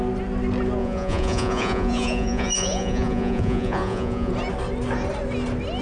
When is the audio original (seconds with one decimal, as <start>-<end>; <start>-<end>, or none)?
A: 0.0-0.8; 4.3-5.8

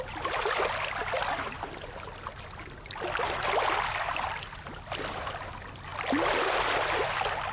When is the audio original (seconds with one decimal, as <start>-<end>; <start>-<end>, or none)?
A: 0.0-7.5

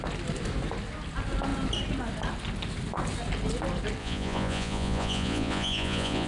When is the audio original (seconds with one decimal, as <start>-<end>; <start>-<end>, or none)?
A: 0.0-4.0

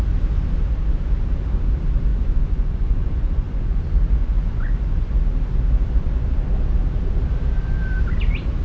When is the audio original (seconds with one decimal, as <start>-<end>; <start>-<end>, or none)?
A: 0.0-2.1; 3.8-4.2; 5.1-8.6

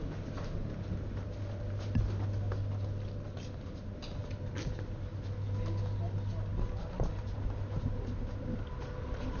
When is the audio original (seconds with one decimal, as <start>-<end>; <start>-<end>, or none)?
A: 0.0-9.4

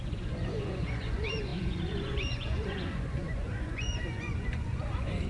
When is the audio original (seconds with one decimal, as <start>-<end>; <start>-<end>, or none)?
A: none